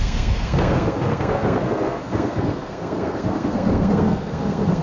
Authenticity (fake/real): fake